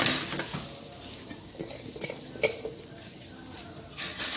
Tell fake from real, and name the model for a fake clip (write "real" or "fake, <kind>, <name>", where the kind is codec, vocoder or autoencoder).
real